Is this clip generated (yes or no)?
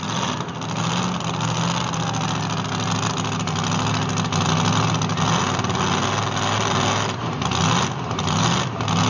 no